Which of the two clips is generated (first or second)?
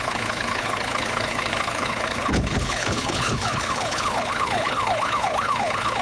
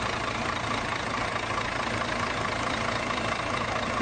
first